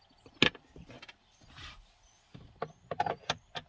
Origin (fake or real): real